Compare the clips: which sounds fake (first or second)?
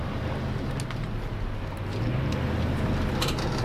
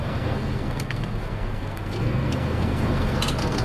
second